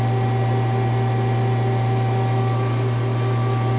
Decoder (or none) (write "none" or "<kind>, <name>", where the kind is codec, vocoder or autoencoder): none